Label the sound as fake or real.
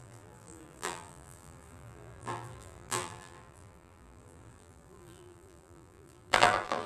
fake